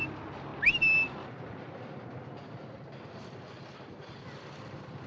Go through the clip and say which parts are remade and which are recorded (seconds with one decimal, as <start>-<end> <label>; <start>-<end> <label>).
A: 0.0-5.1 recorded